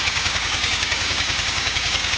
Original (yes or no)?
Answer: no